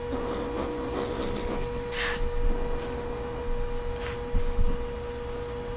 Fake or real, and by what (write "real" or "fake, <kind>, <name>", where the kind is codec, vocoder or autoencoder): real